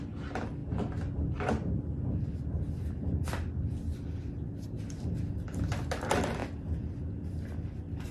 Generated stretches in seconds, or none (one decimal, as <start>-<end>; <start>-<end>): 6.4-8.1